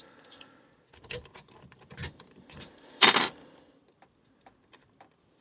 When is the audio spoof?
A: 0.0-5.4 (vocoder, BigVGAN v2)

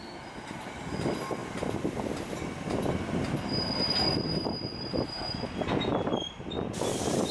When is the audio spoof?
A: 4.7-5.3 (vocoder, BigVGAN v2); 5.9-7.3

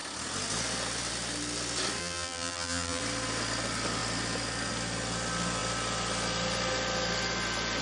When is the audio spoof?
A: 2.0-3.0 (vocoder, BigVGAN v2)

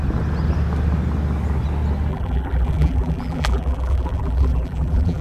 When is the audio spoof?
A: 2.1-5.2 (vocoder, BigVGAN v2)

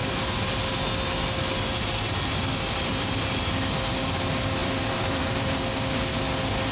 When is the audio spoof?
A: 4.6-5.7 (vocoder, BigVGAN v2)

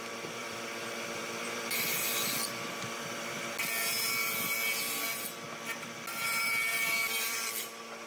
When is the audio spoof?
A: 0.4-3.4 (vocoder, BigVGAN v2); 6.7-7.6

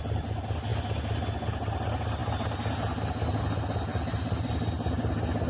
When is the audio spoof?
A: 3.9-4.5 (vocoder, BigVGAN v2)